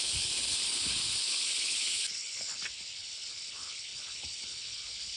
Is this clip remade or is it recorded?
remade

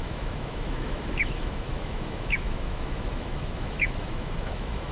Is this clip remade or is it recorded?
remade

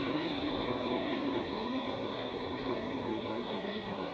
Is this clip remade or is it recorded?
remade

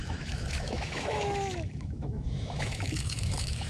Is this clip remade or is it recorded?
remade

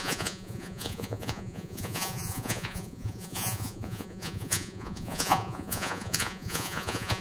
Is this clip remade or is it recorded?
remade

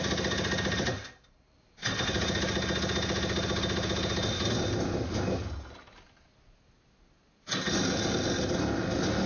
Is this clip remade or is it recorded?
recorded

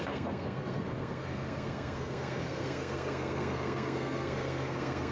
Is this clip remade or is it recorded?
remade